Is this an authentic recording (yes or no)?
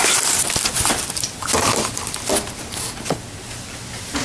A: yes